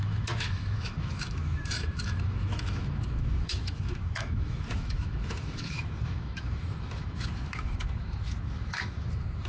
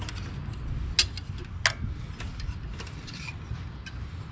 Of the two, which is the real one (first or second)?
second